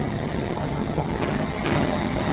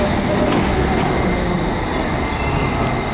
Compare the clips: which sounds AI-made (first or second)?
first